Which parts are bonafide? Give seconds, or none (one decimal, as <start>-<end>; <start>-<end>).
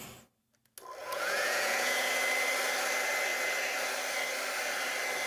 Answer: 0.0-1.0; 2.1-5.3